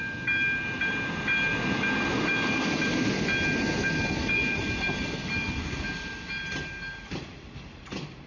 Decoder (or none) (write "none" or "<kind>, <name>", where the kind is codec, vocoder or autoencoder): none